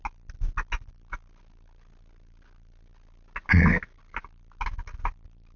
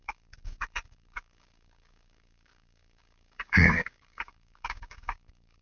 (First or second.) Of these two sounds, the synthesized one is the second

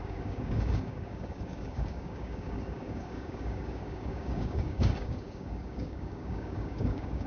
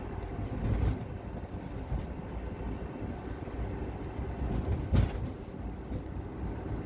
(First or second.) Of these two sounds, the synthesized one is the first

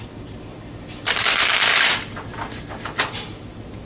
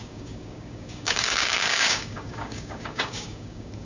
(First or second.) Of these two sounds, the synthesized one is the second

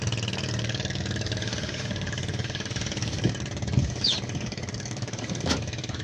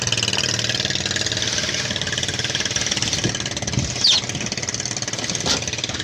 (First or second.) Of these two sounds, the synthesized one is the first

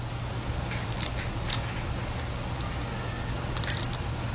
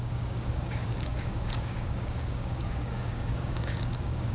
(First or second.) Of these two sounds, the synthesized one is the second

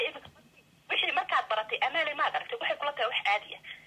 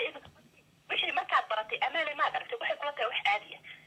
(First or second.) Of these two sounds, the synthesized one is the second